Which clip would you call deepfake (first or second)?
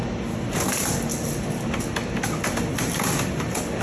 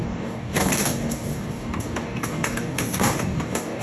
second